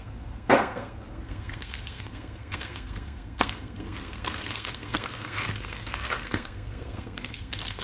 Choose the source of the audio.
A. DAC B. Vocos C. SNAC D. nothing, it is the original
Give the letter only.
C